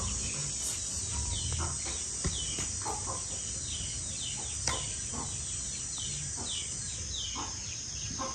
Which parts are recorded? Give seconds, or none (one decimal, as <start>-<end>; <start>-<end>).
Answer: 0.0-8.3